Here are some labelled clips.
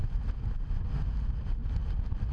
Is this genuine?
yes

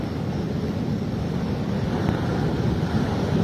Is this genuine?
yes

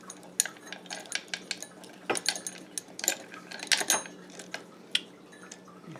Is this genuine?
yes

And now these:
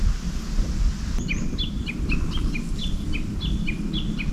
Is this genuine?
yes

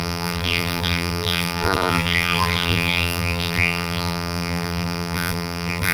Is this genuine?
no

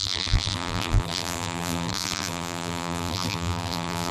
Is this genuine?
no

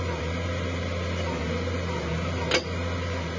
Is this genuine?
yes